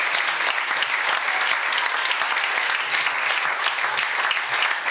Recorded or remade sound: recorded